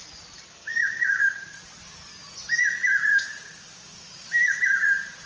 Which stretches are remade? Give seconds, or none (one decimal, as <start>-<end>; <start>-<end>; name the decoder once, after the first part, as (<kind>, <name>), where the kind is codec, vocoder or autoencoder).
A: 0.6-1.2 (codec, DAC); 3.1-4.6